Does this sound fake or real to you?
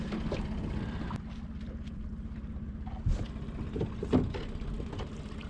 real